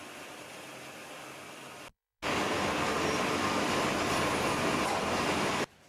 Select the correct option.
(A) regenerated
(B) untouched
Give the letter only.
B